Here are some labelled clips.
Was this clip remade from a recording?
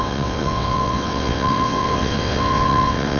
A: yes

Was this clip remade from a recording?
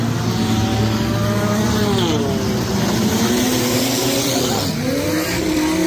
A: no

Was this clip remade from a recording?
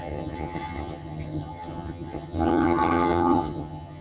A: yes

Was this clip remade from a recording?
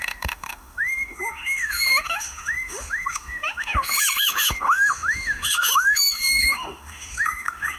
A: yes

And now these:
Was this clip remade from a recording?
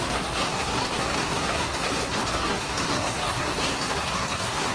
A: yes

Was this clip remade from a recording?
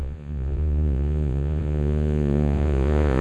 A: yes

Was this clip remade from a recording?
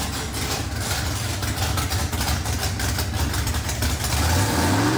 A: no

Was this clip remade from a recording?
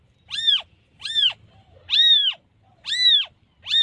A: no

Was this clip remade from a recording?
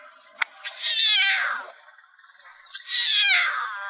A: no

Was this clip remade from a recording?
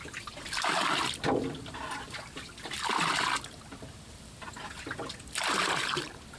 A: no